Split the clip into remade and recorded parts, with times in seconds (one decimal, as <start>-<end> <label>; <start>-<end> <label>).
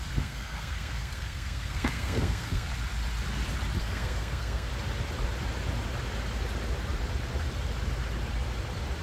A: 0.0-2.7 remade; 2.7-3.8 recorded; 3.8-4.7 remade; 4.7-9.0 recorded